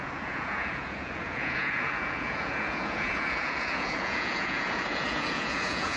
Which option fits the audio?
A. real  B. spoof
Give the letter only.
B